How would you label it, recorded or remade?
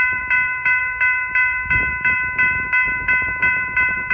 remade